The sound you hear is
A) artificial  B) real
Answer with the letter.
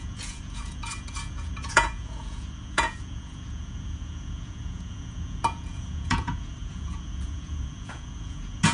A